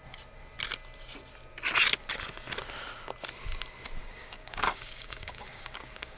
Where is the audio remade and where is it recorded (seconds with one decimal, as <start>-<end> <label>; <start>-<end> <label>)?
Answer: 0.0-4.0 recorded; 4.0-6.2 remade